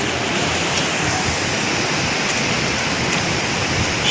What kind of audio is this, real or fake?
real